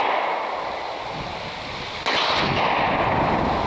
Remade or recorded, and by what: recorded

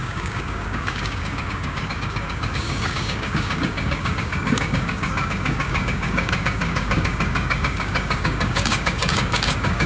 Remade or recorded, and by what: remade, codec, DAC